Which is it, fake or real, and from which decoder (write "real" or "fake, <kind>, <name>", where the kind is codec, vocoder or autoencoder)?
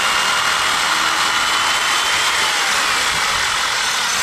real